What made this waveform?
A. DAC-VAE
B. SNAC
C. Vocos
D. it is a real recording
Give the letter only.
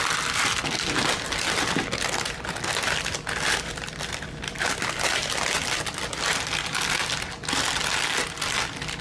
D